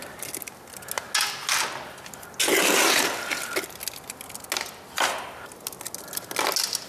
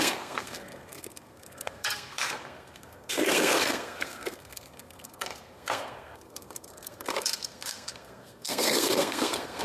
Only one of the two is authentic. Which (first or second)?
first